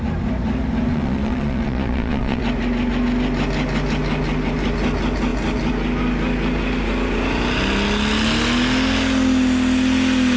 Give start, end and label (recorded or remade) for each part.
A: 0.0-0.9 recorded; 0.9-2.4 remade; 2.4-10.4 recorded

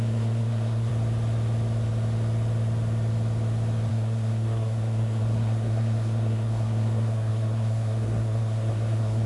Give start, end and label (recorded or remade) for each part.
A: 0.0-0.9 remade; 0.9-3.9 recorded; 3.9-9.3 remade

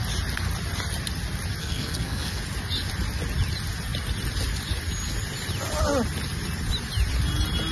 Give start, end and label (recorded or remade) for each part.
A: 0.0-1.6 recorded; 1.6-2.4 remade; 2.4-7.7 recorded

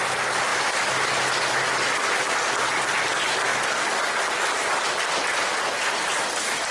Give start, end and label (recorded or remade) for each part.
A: 0.0-6.7 recorded

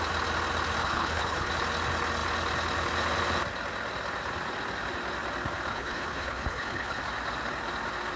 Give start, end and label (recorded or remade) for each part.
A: 0.0-0.8 recorded; 0.8-1.5 remade; 1.5-5.7 recorded; 5.7-7.0 remade; 7.0-8.2 recorded